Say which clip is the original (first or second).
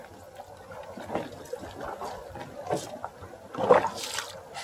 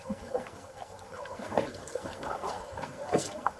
first